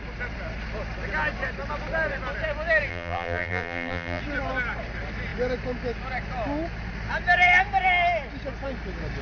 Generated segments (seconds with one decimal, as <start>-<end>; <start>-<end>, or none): 2.9-4.2